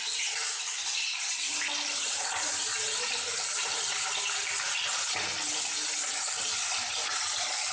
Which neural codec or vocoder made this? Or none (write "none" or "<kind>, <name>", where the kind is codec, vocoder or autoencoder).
none